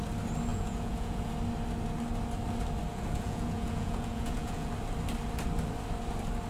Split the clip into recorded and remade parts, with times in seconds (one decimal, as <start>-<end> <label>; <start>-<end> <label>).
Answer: 0.0-0.5 recorded; 0.5-1.3 remade; 1.3-2.9 recorded; 2.9-4.7 remade; 4.7-6.5 recorded